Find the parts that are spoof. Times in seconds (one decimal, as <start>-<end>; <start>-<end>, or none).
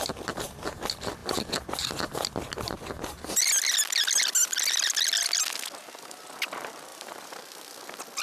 6.9-7.4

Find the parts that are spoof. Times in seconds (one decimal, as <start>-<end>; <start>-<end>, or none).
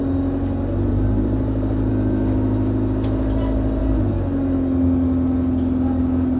0.9-1.9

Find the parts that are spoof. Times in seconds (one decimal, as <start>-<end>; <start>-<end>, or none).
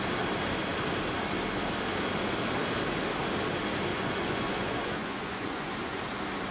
3.9-6.0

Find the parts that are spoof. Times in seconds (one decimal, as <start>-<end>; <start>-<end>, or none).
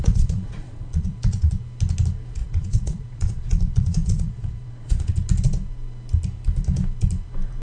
0.0-1.5; 2.4-5.1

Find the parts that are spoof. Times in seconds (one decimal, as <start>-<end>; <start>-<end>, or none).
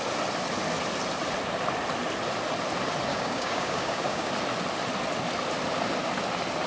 3.1-4.3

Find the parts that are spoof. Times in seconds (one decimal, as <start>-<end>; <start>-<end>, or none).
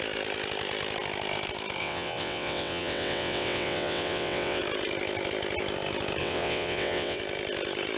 1.8-4.6; 6.2-7.2